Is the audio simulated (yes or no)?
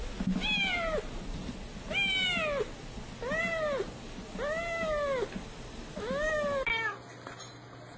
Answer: no